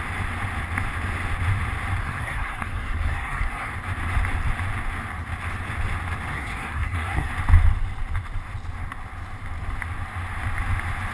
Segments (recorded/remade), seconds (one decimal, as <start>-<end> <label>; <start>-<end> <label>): 0.0-2.0 recorded; 2.0-3.7 remade; 3.7-6.3 recorded; 6.3-7.3 remade; 7.3-11.1 recorded